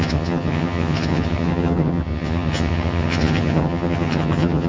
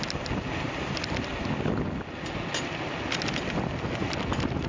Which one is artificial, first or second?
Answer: first